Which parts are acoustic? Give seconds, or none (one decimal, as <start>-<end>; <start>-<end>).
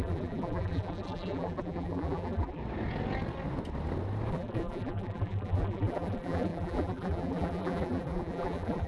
2.6-4.3